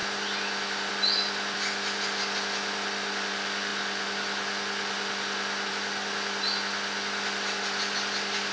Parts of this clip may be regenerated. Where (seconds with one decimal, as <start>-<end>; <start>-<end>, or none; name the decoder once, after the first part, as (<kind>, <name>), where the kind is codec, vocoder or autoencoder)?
none